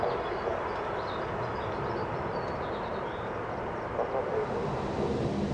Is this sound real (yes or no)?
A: yes